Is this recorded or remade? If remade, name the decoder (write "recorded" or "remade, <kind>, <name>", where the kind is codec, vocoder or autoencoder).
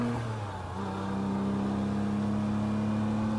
recorded